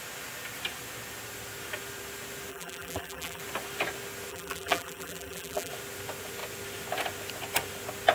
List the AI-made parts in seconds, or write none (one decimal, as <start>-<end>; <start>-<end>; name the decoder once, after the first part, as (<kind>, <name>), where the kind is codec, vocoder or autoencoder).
2.5-3.4 (vocoder, BigVGAN v2); 4.3-5.7